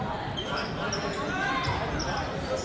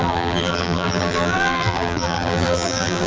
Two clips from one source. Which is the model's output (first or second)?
second